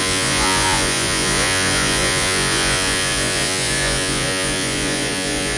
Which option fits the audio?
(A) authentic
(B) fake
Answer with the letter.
B